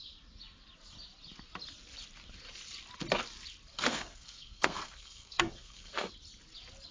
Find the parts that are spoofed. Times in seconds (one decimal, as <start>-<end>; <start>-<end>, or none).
3.7-6.1